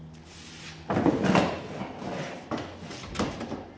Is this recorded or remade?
recorded